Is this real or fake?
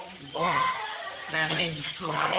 fake